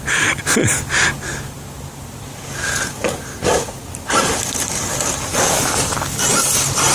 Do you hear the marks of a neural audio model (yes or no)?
no